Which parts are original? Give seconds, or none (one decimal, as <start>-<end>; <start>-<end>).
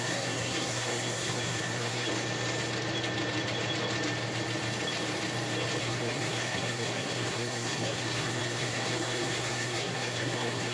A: 2.1-5.8